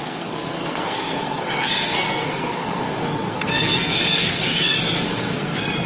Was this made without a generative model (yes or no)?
no